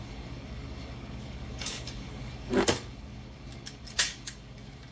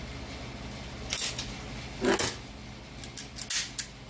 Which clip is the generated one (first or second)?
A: first